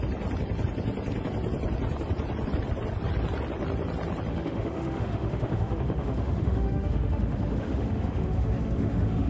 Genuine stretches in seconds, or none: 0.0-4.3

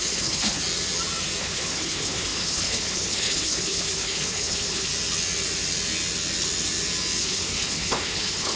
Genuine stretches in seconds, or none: 0.6-1.4; 4.9-7.2

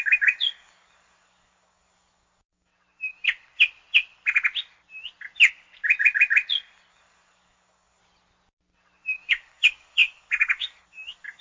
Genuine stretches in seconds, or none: 2.7-6.9; 8.0-9.3